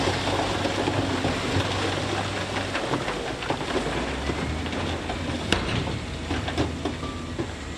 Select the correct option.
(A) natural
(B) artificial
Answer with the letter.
A